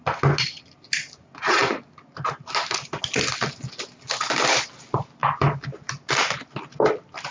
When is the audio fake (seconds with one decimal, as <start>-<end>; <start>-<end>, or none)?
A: none